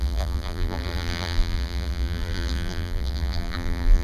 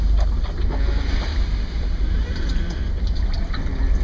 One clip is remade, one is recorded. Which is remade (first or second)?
first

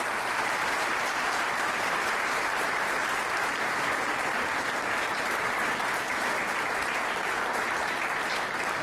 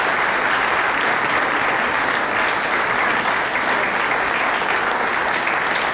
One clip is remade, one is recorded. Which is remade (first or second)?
first